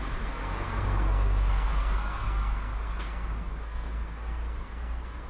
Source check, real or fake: fake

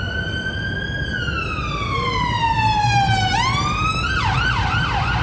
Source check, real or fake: real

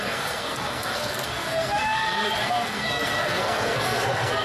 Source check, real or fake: fake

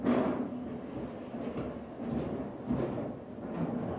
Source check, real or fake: real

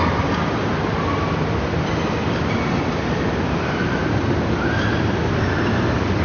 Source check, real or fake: fake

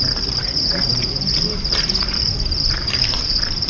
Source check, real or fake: fake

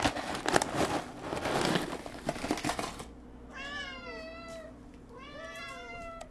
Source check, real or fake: real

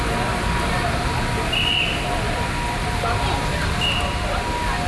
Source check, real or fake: real